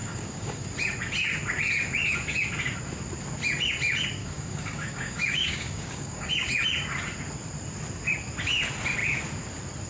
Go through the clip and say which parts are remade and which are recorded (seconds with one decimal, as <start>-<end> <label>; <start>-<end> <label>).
0.0-0.7 remade; 0.7-4.2 recorded; 4.2-6.3 remade; 6.3-9.9 recorded